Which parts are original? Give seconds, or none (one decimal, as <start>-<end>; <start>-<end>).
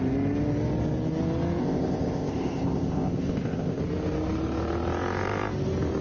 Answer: 0.0-1.6; 3.8-6.0